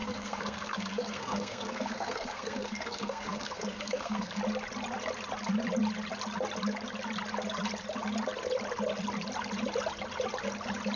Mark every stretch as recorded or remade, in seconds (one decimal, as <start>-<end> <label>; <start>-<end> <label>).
0.0-4.4 remade; 4.4-11.0 recorded